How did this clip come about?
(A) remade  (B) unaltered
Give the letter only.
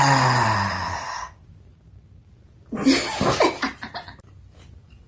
B